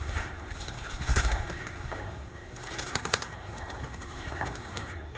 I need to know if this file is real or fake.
fake